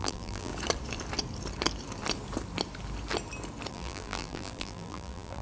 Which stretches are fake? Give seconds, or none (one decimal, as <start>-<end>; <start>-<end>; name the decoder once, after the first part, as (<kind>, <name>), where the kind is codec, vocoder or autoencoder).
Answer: 0.0-0.5 (vocoder, BigVGAN v2); 3.7-5.4